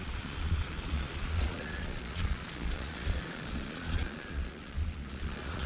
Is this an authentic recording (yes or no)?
no